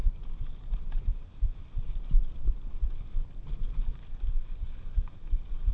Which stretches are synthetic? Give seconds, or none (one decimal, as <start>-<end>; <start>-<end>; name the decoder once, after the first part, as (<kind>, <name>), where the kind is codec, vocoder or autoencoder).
none